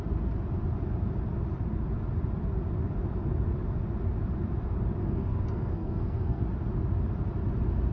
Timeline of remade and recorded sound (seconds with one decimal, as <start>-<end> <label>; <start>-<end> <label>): 0.0-5.0 recorded; 5.0-6.4 remade; 6.4-7.9 recorded